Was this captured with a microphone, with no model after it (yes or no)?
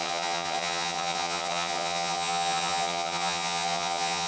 no